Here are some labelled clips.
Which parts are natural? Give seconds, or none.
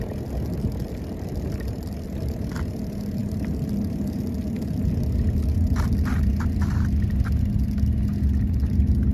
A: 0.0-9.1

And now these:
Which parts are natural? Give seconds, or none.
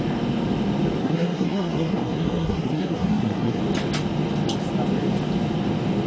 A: 0.0-1.0; 3.6-6.1